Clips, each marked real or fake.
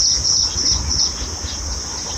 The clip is real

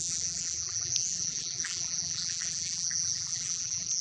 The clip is fake